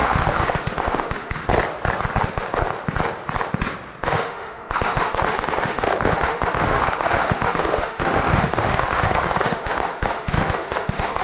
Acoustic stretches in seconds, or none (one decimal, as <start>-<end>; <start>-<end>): 1.4-4.0